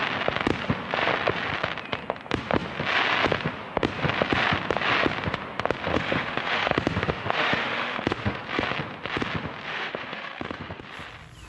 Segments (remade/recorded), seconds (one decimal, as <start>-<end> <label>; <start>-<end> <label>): 0.0-5.9 recorded; 5.9-8.4 remade; 8.4-9.7 recorded; 9.7-10.8 remade; 10.8-11.5 recorded